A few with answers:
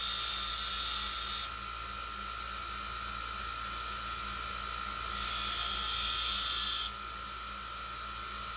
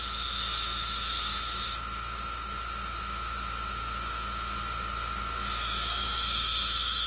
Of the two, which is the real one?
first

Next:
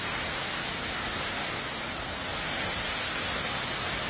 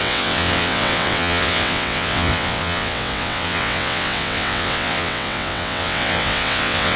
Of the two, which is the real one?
first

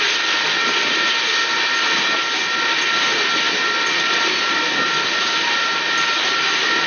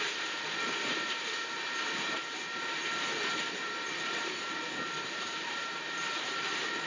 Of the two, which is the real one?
first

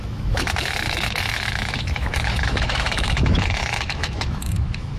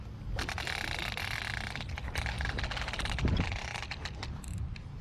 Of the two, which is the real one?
second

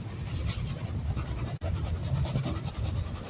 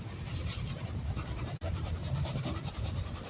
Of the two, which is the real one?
first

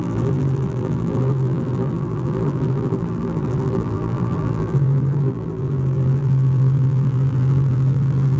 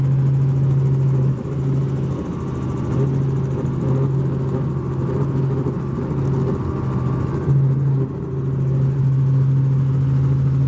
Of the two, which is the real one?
second